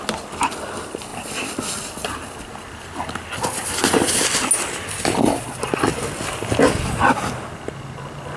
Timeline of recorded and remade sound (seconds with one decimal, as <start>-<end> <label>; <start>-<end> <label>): 0.0-8.4 recorded